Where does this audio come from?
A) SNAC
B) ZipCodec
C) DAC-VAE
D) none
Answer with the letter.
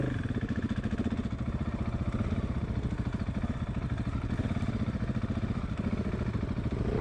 D